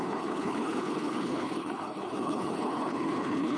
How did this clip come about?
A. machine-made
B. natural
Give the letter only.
A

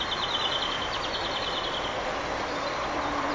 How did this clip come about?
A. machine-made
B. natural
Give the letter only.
B